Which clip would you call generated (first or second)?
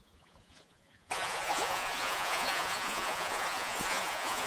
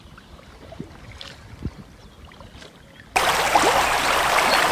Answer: first